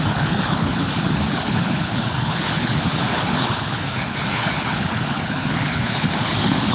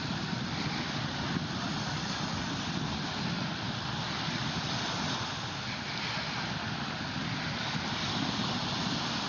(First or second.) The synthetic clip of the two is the first